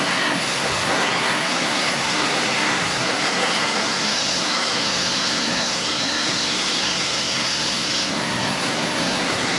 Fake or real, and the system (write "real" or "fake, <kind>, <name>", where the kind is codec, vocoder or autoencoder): fake, codec, SNAC